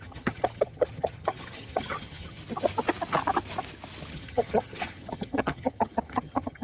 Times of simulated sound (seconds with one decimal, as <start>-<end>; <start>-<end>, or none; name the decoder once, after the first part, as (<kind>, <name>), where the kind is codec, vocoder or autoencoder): 0.0-2.4 (vocoder, HiFi-GAN); 4.1-6.6